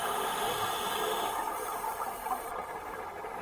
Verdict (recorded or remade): remade